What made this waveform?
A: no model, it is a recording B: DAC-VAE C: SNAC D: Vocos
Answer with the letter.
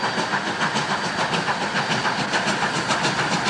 A